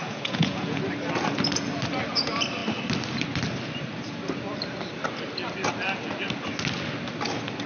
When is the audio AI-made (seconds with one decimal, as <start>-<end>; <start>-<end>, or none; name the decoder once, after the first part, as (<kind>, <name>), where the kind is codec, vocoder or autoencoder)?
0.0-0.8 (vocoder, Vocos)